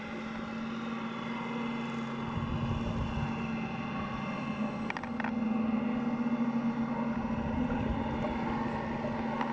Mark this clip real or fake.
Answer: real